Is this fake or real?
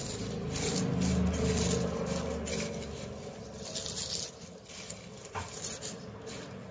real